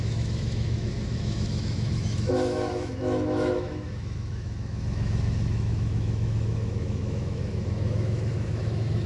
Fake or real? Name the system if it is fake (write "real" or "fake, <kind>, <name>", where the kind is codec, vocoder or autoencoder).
fake, autoencoder, DAC-VAE